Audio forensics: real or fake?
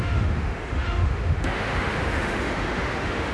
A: fake